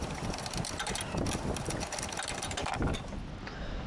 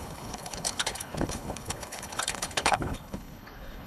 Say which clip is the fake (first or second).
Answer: second